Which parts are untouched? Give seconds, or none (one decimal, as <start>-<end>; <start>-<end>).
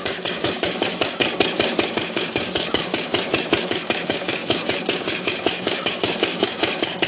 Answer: 1.2-1.9; 3.1-3.6